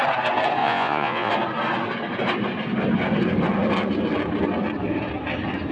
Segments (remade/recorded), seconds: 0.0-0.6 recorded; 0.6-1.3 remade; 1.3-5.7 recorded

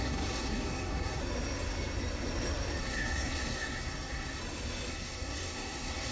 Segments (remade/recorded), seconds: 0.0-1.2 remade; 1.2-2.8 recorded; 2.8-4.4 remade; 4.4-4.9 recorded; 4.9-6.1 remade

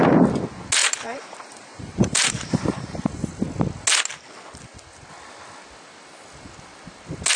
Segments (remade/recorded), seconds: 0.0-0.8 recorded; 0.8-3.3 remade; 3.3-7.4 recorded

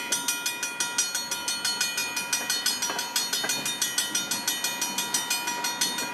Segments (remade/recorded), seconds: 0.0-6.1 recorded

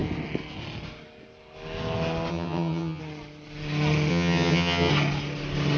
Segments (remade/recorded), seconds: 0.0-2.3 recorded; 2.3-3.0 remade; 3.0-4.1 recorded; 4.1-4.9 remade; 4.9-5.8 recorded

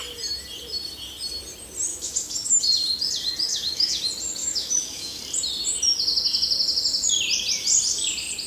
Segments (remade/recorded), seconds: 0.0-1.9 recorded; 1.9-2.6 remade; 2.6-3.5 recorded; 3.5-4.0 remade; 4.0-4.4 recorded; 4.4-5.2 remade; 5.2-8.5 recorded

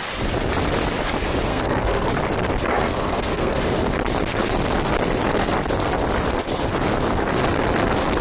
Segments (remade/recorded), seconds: 0.0-1.5 recorded; 1.5-2.1 remade; 2.1-2.7 recorded; 2.7-3.6 remade; 3.6-8.2 recorded

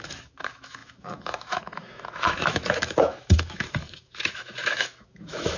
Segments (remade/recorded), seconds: 0.0-5.6 remade